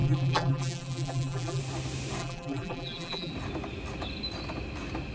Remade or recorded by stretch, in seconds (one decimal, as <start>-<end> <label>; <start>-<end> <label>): 0.0-1.6 remade; 1.6-2.2 recorded; 2.2-3.3 remade; 3.3-5.1 recorded